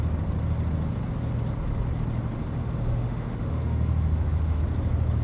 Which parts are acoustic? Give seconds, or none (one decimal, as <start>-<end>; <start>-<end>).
0.0-2.6; 4.6-5.2